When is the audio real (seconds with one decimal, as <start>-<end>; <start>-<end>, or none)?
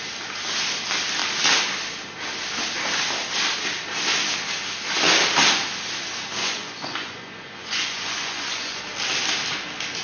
0.0-6.4; 8.8-10.0